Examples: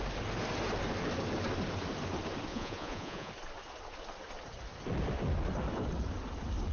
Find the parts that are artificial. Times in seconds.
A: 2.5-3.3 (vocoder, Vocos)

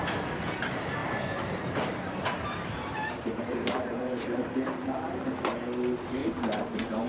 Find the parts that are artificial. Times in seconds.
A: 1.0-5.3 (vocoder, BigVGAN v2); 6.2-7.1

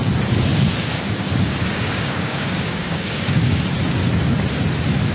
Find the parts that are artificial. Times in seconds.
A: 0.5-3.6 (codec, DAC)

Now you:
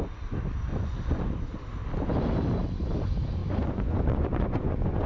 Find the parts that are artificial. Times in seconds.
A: 0.7-1.3 (vocoder, Vocos); 3.4-5.1

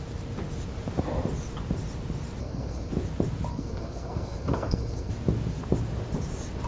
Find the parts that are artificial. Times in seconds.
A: 2.4-2.9 (codec, SNAC); 3.5-5.1

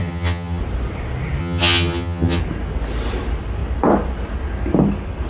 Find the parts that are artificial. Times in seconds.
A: 0.0-0.6 (vocoder, HiFi-GAN); 1.4-2.4

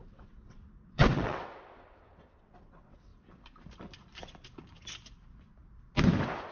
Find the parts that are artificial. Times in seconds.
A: 0.0-3.1 (vocoder, WaveNeXt)